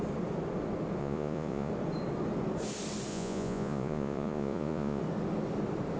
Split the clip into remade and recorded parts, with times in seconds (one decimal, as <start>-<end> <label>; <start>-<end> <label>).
0.0-1.0 recorded; 1.0-1.7 remade; 1.7-3.1 recorded; 3.1-5.0 remade; 5.0-6.0 recorded